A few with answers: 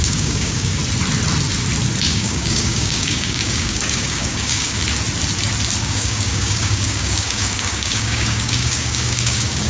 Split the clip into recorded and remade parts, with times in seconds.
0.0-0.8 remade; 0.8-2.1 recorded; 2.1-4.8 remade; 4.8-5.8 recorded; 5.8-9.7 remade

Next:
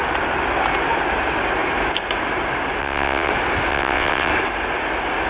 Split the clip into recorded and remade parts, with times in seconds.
0.0-2.8 recorded; 2.8-3.3 remade; 3.3-3.7 recorded; 3.7-4.3 remade; 4.3-5.3 recorded